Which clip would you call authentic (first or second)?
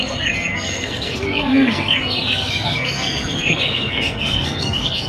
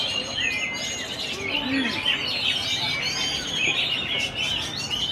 second